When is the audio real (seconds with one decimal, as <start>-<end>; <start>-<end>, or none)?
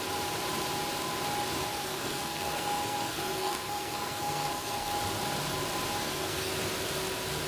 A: 0.0-1.7; 4.9-6.0; 6.5-7.5